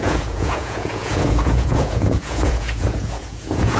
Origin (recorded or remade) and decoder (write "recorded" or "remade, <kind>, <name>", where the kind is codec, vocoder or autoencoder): remade, vocoder, Vocos